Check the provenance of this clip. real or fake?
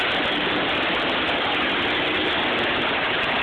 real